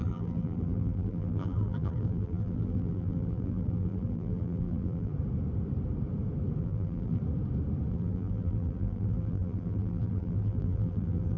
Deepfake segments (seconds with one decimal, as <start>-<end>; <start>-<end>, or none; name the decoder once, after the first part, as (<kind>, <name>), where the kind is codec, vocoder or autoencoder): 0.0-5.1 (vocoder, BigVGAN v2); 6.6-7.2; 7.9-11.4